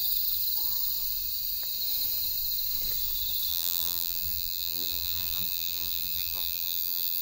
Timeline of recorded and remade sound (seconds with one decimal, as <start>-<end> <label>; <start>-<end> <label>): 0.0-3.5 recorded; 3.5-7.2 remade